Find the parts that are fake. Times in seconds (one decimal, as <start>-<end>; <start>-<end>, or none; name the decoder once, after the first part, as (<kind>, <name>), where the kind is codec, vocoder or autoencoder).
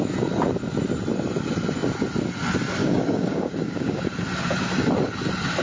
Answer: 2.8-4.0 (codec, DAC)